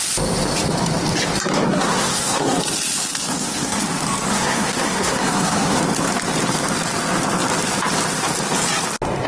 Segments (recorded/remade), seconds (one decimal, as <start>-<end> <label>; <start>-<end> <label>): 0.0-1.7 recorded; 1.7-2.6 remade; 2.6-3.2 recorded; 3.2-3.8 remade; 3.8-4.3 recorded; 4.3-5.8 remade; 5.8-9.3 recorded